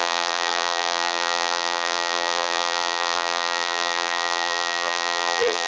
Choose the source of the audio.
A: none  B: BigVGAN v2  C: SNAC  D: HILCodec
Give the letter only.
B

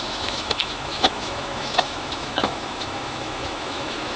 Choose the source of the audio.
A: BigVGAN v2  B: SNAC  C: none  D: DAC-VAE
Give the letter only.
D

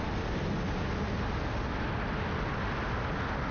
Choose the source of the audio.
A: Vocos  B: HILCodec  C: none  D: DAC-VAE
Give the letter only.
C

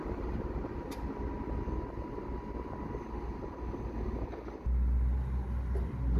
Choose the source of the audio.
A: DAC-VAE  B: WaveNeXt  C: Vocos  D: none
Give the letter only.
D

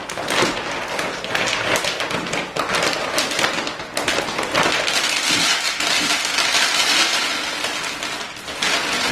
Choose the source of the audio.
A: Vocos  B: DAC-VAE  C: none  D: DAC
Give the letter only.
C